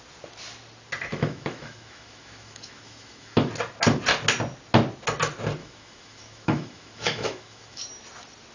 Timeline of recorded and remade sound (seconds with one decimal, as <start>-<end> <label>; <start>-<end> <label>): 0.0-1.1 recorded; 1.1-3.5 remade; 3.5-5.6 recorded; 5.6-7.8 remade; 7.8-8.5 recorded